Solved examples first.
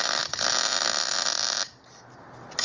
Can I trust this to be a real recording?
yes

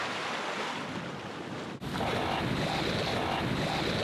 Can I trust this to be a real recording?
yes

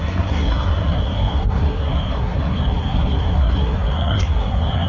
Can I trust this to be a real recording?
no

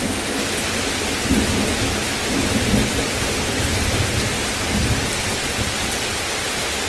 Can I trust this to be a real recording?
yes